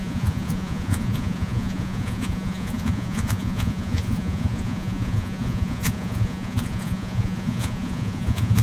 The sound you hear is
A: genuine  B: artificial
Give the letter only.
B